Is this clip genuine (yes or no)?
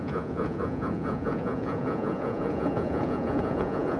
no